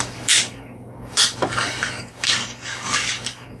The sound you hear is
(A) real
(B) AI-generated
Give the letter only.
B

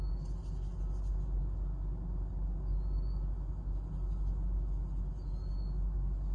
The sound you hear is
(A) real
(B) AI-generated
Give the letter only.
A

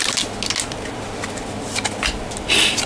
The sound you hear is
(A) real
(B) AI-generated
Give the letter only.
A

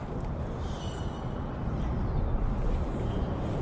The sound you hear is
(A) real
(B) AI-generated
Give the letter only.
A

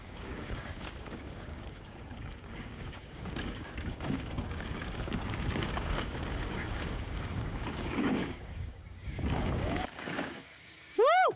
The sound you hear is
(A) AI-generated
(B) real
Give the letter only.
A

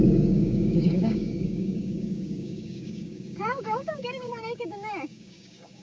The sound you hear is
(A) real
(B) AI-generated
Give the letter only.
B